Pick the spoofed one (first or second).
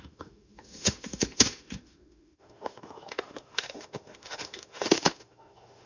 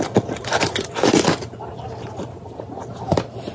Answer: first